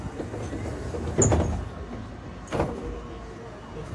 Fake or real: real